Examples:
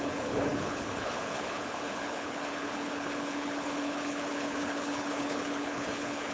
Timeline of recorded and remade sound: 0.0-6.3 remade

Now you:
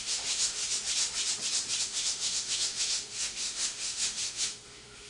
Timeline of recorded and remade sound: 0.0-0.6 remade; 0.6-1.8 recorded; 1.8-5.1 remade

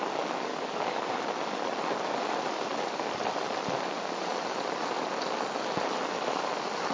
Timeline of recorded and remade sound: 0.0-0.5 recorded; 0.5-1.0 remade; 1.0-6.9 recorded

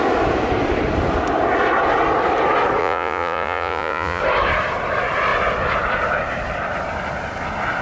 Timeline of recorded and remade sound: 0.0-2.8 recorded; 2.8-4.2 remade; 4.2-7.8 recorded

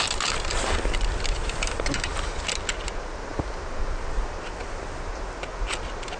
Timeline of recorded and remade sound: 0.0-6.2 recorded

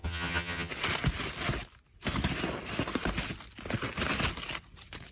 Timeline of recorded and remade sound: 0.0-0.7 remade; 0.7-5.1 recorded